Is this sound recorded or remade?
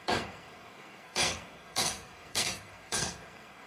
remade